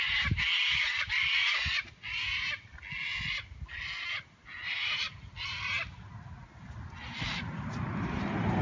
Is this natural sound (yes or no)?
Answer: yes